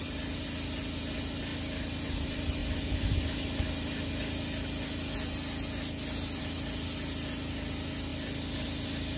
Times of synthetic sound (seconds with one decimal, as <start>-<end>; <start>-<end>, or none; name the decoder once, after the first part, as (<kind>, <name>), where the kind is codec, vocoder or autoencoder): none